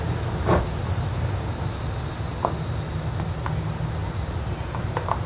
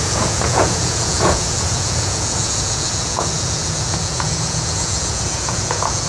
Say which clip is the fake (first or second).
second